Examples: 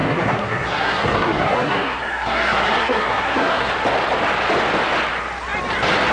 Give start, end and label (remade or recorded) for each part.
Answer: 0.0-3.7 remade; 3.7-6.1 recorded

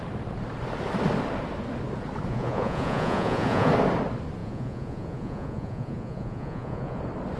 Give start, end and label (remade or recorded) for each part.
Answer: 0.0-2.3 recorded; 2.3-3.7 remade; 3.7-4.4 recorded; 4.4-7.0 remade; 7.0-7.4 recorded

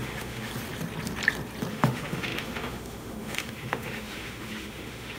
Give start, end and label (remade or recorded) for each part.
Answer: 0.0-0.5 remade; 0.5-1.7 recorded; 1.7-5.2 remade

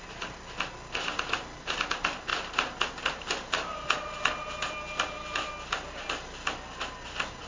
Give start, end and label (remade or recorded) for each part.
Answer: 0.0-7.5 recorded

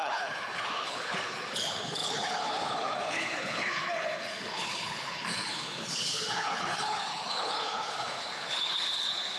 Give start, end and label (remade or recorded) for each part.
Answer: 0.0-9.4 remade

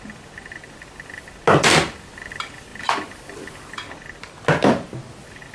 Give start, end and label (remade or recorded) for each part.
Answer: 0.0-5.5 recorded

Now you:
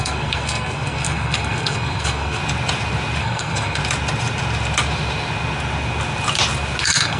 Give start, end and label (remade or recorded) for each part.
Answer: 0.0-2.4 remade; 2.4-3.2 recorded; 3.2-3.8 remade; 3.8-6.8 recorded; 6.8-7.2 remade

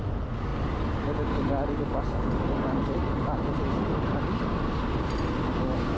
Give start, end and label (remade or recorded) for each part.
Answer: 0.0-6.0 recorded